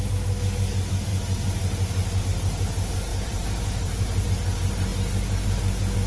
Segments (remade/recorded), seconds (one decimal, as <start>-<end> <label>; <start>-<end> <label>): 0.0-3.1 recorded; 3.1-4.3 remade; 4.3-6.1 recorded